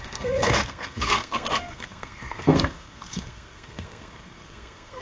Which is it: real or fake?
fake